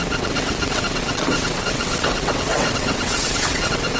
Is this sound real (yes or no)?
no